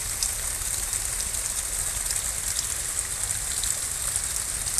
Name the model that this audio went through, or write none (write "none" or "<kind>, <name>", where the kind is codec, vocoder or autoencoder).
none